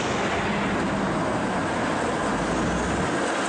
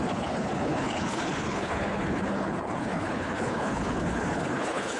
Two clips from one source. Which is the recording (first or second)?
first